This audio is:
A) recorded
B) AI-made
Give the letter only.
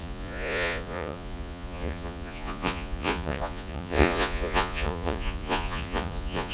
B